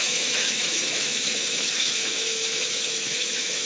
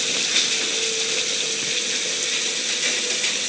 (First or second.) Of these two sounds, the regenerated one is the first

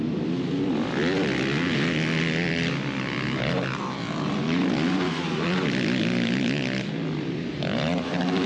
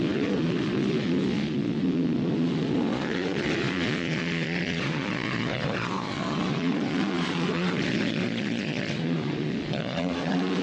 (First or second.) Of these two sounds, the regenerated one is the second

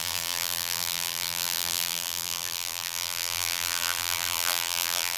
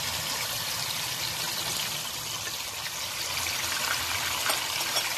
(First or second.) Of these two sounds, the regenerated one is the first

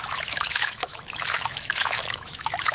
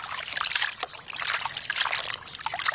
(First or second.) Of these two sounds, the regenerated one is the first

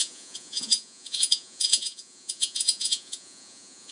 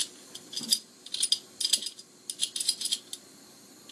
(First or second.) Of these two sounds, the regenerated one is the first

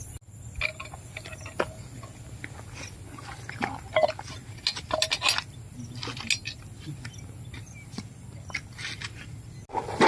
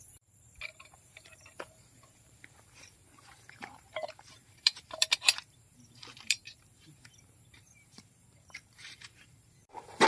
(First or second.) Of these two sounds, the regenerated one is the second